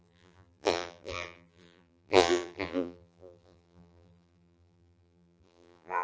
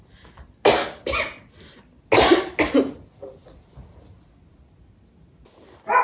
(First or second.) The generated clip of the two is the first